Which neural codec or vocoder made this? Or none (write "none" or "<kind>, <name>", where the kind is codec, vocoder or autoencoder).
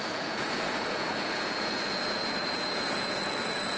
vocoder, Vocos